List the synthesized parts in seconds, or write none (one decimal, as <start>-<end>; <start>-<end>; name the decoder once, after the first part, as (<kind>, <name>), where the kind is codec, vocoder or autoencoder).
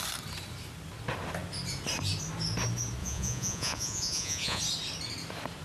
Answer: 3.0-4.6 (vocoder, Vocos)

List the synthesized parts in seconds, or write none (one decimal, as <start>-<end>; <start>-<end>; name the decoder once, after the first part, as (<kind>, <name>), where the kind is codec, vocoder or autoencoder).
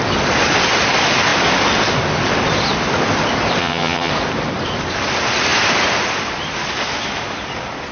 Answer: 3.6-4.1 (vocoder, HiFi-GAN)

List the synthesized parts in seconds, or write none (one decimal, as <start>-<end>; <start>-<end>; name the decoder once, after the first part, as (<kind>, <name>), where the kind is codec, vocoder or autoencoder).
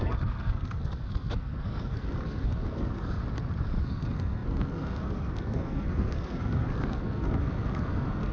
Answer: 0.0-3.2 (codec, SNAC); 3.8-8.3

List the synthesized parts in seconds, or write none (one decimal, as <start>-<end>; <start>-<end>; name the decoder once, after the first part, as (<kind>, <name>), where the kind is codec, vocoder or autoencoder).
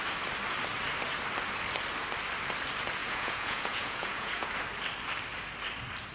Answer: 3.0-4.5 (vocoder, Vocos)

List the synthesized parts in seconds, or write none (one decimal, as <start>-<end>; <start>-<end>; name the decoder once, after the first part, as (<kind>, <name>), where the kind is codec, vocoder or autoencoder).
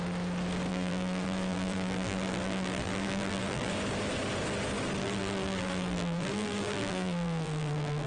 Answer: 0.7-3.7 (vocoder, BigVGAN v2); 5.0-8.1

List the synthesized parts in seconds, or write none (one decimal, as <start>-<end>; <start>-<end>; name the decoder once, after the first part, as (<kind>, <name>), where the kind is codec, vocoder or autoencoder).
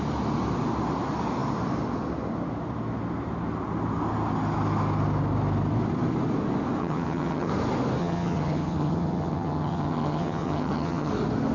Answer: 6.8-7.5 (vocoder, HiFi-GAN); 8.0-11.1